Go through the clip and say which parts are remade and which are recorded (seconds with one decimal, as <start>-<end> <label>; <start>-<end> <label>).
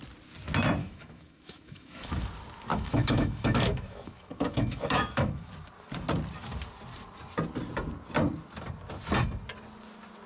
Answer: 0.0-0.8 recorded; 0.8-2.1 remade; 2.1-2.7 recorded; 2.7-5.5 remade; 5.5-10.3 recorded